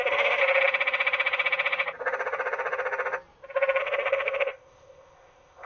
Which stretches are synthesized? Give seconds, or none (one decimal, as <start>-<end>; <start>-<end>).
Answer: 0.0-0.4; 3.8-5.7